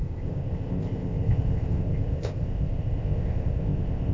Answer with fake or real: fake